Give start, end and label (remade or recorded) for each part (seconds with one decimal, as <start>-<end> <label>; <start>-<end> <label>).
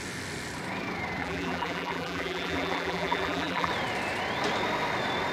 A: 0.0-1.2 recorded; 1.2-3.7 remade; 3.7-5.3 recorded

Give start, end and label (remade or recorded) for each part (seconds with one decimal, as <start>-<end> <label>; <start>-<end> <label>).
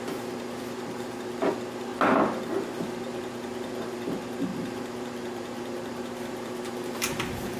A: 0.0-4.5 recorded; 4.5-7.6 remade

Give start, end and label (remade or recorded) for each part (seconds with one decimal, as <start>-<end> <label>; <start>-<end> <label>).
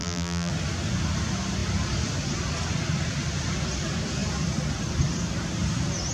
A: 0.0-0.5 remade; 0.5-6.1 recorded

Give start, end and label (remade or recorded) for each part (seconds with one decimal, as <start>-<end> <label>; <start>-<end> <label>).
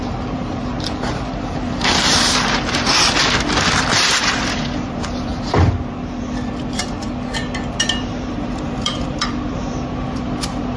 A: 0.0-5.3 remade; 5.3-7.8 recorded; 7.8-10.8 remade